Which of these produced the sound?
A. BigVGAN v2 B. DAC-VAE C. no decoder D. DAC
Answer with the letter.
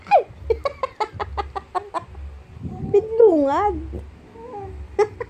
C